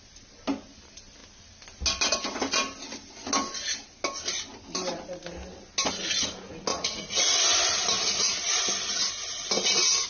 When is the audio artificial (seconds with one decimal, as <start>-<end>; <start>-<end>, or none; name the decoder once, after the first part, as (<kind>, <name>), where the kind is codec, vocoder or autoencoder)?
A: 6.7-7.2 (vocoder, Vocos)